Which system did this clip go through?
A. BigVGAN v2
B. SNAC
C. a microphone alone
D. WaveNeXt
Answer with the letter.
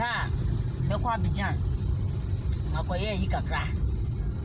C